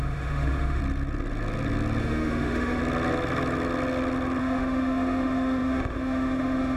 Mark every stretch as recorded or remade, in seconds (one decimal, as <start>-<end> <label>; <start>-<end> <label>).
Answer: 0.0-0.8 remade; 0.8-2.0 recorded; 2.0-2.8 remade; 2.8-4.4 recorded; 4.4-6.8 remade